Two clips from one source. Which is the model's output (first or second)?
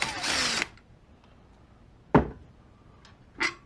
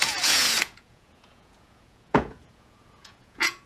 second